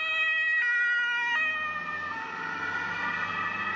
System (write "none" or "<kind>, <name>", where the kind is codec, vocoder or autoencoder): none